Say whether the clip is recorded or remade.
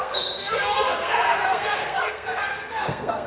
remade